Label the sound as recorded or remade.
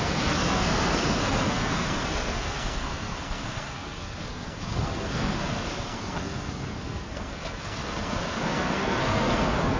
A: remade